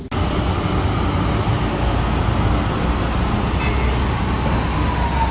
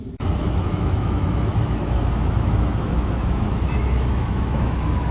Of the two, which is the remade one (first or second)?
second